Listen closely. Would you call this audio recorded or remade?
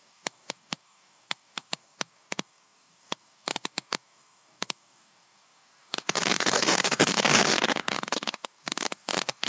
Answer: remade